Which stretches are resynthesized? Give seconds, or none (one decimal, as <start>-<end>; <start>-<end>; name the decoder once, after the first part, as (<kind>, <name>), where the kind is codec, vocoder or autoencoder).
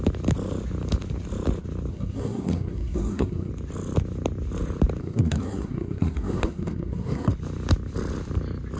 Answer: 1.9-3.5 (codec, SNAC); 5.0-7.3